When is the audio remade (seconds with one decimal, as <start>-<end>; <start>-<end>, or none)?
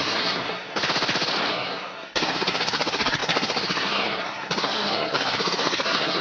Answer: 0.0-0.8; 1.5-6.2